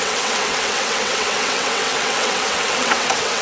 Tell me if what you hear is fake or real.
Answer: fake